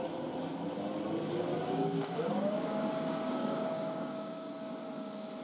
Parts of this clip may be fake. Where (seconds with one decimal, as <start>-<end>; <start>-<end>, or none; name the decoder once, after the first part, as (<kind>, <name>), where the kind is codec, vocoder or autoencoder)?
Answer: 1.5-4.7 (codec, DAC)